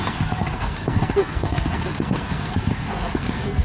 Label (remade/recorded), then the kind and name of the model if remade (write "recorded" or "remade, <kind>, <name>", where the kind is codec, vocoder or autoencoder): remade, codec, SNAC